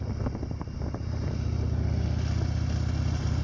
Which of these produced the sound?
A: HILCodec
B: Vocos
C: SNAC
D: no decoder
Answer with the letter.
D